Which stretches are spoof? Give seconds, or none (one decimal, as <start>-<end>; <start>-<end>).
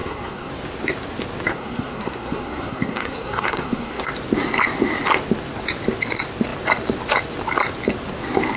0.0-0.5; 1.5-4.0